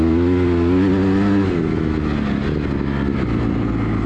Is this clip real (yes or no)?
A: yes